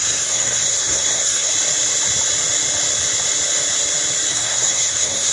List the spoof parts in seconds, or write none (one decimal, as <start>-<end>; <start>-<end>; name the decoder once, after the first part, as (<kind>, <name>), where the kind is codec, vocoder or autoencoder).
0.0-1.5 (codec, SNAC); 4.3-5.3